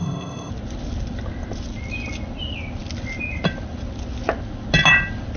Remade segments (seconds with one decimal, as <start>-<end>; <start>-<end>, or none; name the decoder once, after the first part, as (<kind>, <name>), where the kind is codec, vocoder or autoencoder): 0.0-0.5 (codec, ZipCodec)